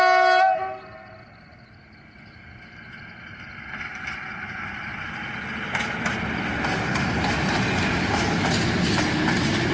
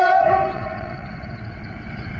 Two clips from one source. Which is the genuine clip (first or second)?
first